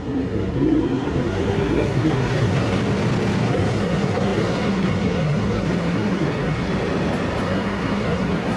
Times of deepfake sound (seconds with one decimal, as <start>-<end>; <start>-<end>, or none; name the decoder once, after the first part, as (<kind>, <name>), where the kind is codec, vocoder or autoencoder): 0.0-2.8 (codec, SNAC); 3.4-6.7; 7.4-8.6

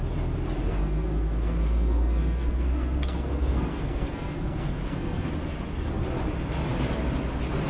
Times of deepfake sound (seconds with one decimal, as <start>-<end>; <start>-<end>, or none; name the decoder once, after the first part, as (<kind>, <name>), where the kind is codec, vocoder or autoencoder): 0.7-5.3 (codec, SNAC)

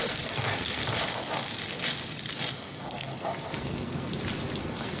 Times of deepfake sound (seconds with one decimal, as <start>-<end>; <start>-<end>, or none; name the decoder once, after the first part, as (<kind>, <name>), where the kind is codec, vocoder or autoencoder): 0.0-0.8 (codec, SNAC); 2.5-4.1; 4.6-5.0

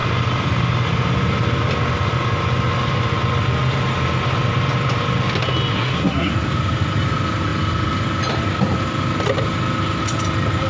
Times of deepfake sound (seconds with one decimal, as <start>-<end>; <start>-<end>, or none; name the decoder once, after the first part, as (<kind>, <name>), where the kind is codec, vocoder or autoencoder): 5.7-6.3 (codec, SNAC)